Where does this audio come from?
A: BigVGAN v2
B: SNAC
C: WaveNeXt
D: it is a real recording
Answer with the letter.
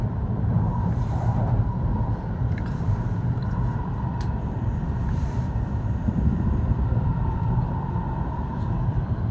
A